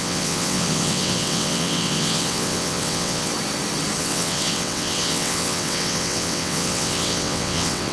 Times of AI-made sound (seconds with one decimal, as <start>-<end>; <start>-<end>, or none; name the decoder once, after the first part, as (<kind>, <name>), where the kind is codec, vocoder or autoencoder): 0.0-3.3 (vocoder, WaveNeXt); 4.0-7.9